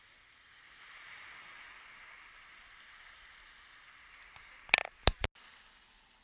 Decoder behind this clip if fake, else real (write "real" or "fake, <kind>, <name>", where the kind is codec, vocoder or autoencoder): real